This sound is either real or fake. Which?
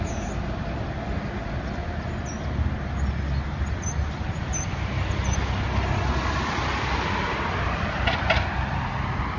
real